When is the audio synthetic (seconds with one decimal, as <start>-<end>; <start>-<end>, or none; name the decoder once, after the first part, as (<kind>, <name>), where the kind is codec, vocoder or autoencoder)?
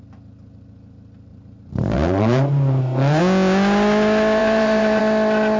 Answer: 1.3-3.2 (vocoder, BigVGAN v2); 4.4-5.0